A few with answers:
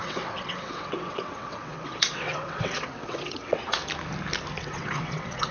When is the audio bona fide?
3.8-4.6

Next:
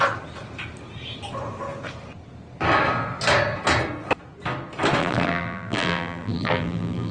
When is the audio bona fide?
0.0-5.0

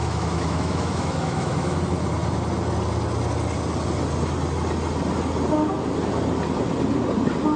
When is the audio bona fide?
1.8-7.6

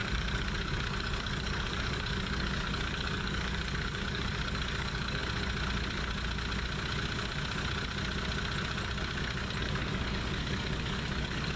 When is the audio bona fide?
5.2-9.6

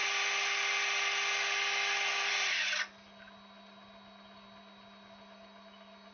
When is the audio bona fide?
0.0-6.1

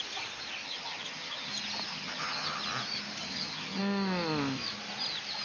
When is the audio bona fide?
0.0-0.6; 1.5-1.9; 2.6-3.2; 3.8-5.4

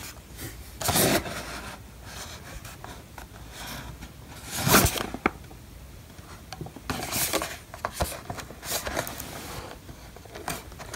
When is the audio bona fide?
0.0-11.0